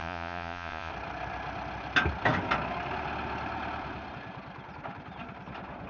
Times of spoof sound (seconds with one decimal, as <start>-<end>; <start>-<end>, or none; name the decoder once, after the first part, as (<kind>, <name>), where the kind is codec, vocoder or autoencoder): 0.0-0.9 (vocoder, Vocos)